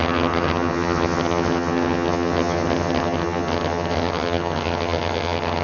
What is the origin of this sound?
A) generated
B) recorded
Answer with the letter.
A